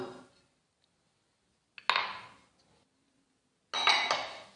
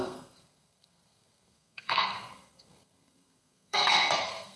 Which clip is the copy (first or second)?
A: second